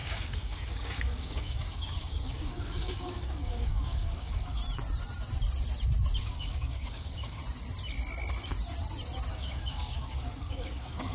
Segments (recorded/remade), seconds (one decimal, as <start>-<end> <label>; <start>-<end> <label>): 0.0-4.6 remade; 4.6-6.2 recorded; 6.2-7.4 remade; 7.4-9.3 recorded; 9.3-11.1 remade